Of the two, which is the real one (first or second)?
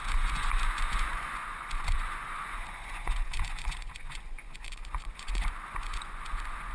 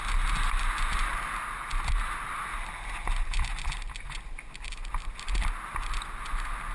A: second